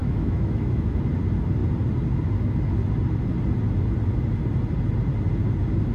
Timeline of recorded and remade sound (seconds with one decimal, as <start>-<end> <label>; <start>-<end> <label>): 0.0-1.0 remade; 1.0-5.9 recorded